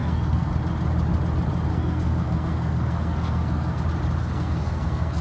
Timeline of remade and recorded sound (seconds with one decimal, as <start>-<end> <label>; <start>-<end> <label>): 0.0-0.5 remade; 0.5-1.7 recorded; 1.7-3.8 remade; 3.8-4.2 recorded; 4.2-5.2 remade